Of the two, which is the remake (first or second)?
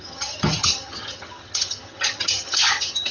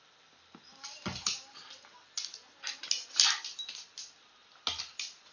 first